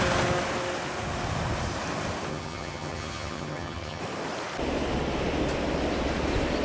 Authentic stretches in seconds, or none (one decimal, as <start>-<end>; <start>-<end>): 0.0-2.3; 4.0-6.6